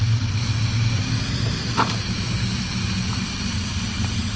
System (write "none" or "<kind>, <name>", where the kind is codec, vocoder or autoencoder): none